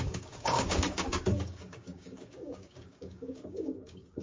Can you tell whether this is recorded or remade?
remade